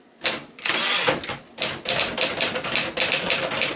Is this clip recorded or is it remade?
remade